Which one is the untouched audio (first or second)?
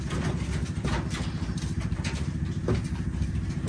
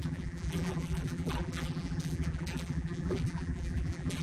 first